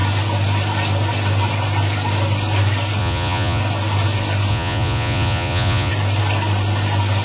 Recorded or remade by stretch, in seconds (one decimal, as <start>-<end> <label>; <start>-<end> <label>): 0.0-3.0 recorded; 3.0-3.6 remade; 3.6-4.5 recorded; 4.5-5.9 remade; 5.9-7.2 recorded